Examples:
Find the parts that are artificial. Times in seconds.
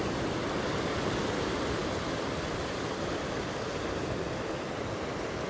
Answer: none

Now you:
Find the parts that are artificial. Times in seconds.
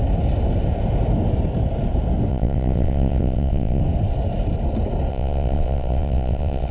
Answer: 2.3-3.8 (vocoder, WaveNeXt); 5.1-6.7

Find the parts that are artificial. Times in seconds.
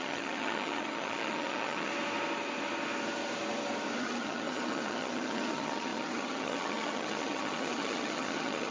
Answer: 0.0-1.9 (vocoder, HiFi-GAN); 4.0-8.7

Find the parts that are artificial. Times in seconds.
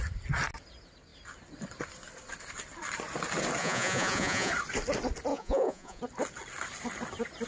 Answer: 3.6-4.5 (vocoder, Vocos); 5.3-6.0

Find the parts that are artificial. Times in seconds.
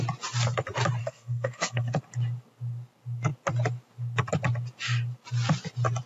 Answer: 1.0-2.0 (codec, SNAC)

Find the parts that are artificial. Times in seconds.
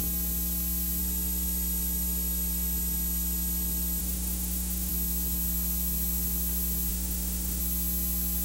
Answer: 4.0-4.9 (autoencoder, DAC-VAE); 6.9-7.6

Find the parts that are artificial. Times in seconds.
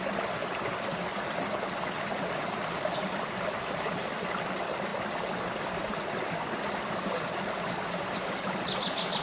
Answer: none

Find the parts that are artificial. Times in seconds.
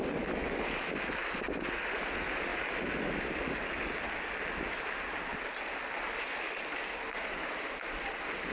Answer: none